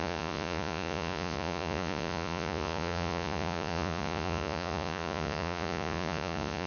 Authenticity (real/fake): fake